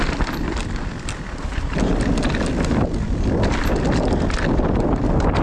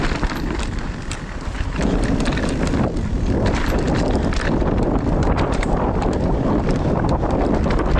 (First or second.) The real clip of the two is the first